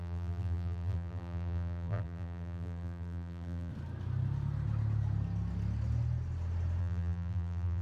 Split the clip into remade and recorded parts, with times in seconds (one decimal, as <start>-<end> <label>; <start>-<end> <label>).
0.0-3.7 remade; 3.7-6.8 recorded; 6.8-7.8 remade